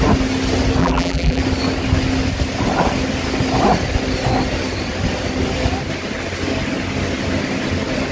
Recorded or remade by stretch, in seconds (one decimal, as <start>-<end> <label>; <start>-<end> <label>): 0.0-0.8 recorded; 0.8-1.4 remade; 1.4-8.1 recorded